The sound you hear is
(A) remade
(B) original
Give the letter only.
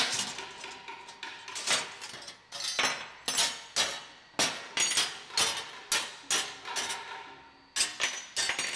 B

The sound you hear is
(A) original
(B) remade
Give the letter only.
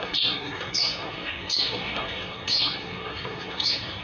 B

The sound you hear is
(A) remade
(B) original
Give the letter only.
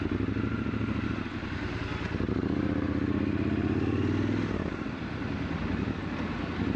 B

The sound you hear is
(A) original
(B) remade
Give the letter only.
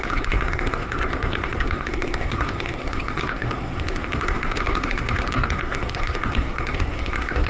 B